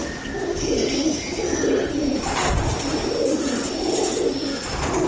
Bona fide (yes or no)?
yes